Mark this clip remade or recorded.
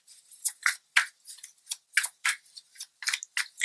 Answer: recorded